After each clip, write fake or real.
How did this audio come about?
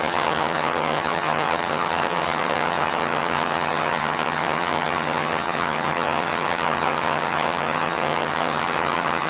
fake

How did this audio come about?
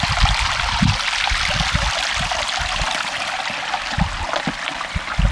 real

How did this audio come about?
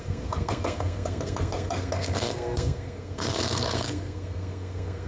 fake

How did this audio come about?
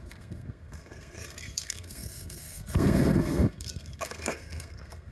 fake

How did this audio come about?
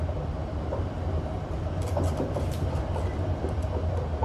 real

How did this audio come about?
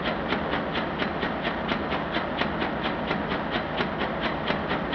real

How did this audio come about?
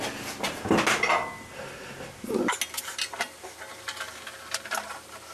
real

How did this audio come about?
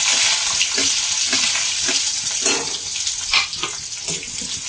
real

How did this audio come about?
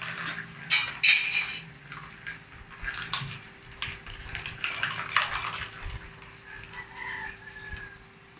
real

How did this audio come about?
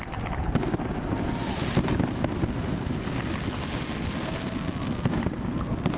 real